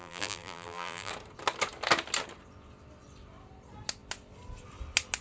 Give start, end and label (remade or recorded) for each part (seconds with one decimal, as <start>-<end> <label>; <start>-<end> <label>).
0.0-1.1 remade; 1.1-5.2 recorded